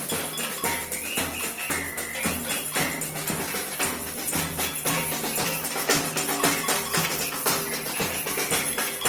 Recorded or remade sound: recorded